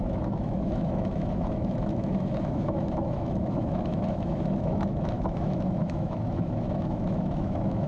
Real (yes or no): no